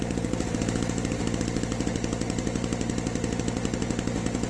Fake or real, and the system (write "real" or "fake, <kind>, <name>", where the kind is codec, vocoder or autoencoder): real